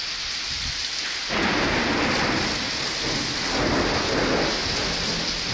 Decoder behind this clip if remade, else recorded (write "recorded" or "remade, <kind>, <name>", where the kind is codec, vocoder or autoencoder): recorded